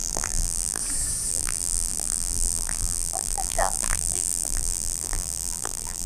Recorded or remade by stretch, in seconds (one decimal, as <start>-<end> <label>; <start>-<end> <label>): 0.0-0.8 remade; 0.8-1.3 recorded; 1.3-6.1 remade